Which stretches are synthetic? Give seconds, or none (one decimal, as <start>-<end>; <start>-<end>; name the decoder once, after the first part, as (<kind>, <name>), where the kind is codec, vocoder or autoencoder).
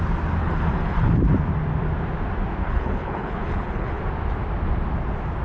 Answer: 0.4-1.2 (codec, HILCodec); 2.6-4.0